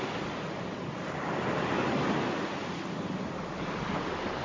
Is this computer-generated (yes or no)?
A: no